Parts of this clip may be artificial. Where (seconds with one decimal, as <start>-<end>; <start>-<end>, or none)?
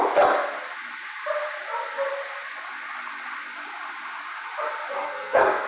5.0-5.7